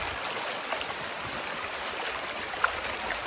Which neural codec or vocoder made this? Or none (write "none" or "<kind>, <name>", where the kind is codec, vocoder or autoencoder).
none